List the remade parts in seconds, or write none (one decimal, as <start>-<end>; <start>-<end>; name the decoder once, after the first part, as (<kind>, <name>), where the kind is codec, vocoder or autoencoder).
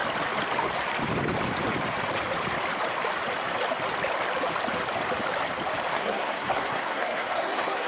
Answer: 5.9-7.9 (codec, SNAC)